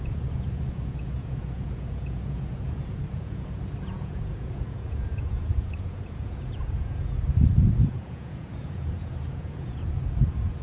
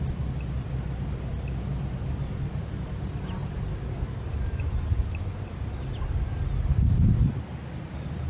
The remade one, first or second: first